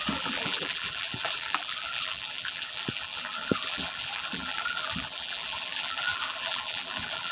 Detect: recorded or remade remade